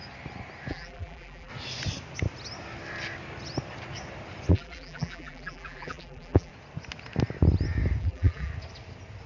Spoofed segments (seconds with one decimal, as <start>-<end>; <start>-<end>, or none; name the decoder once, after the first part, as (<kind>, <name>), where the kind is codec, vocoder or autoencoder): 0.7-1.5 (vocoder, BigVGAN v2); 4.5-6.5; 8.0-8.5